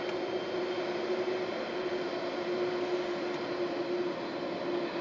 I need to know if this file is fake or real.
real